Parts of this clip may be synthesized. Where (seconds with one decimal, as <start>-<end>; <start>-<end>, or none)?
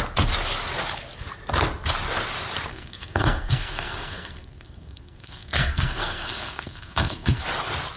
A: 2.7-7.4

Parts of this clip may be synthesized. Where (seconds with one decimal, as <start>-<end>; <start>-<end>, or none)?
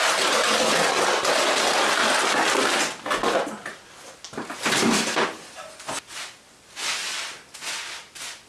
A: none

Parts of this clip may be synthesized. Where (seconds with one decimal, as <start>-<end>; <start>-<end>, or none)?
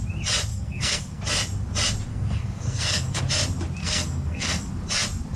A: 0.5-1.2; 2.1-3.2; 3.8-4.7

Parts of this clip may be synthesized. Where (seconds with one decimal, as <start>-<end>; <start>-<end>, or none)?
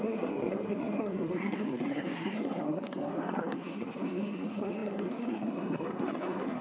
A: 0.0-6.6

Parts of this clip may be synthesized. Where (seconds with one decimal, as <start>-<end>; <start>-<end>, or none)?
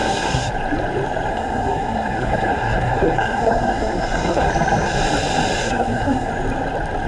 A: 0.0-0.5; 1.3-4.5; 5.6-6.3